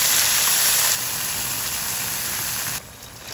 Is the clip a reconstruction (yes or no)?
no